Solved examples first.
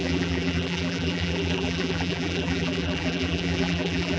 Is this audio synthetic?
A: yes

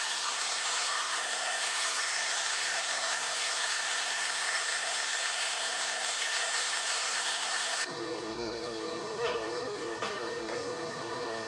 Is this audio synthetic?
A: yes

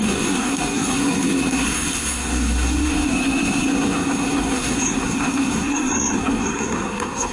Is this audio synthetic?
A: yes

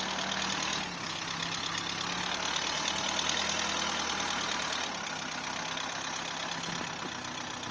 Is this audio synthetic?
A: no